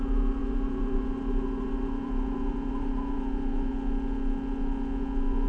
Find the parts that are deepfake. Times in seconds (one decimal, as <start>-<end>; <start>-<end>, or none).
0.4-3.7